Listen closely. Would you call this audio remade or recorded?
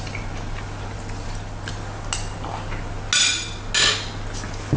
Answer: recorded